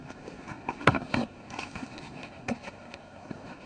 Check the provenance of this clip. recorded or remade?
remade